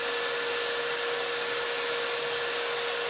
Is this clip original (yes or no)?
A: yes